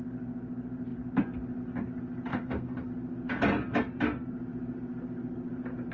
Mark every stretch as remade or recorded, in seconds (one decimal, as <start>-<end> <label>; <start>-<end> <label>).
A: 0.0-2.3 recorded; 2.3-2.9 remade; 2.9-5.9 recorded